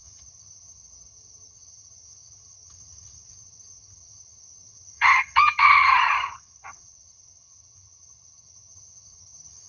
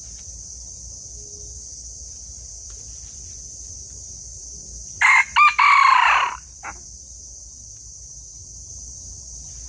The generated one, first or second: first